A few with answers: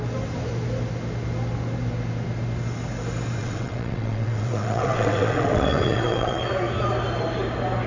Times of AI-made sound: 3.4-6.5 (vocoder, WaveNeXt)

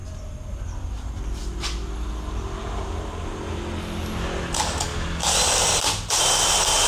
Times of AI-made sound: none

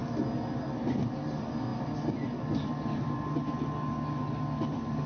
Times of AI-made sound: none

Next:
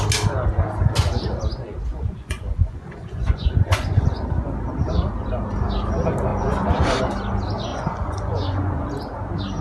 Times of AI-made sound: 1.9-4.2 (vocoder, Vocos); 6.3-7.0; 7.7-8.9

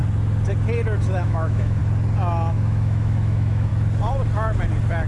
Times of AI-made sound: 1.2-1.8 (autoencoder, DAC-VAE); 2.5-3.7

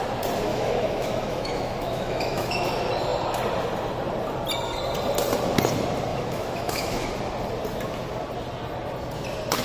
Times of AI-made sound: 0.5-2.7 (autoencoder, DAC-VAE); 6.1-7.1